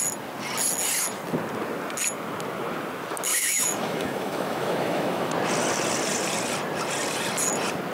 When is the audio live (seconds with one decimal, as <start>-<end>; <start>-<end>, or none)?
0.0-3.3; 5.3-7.9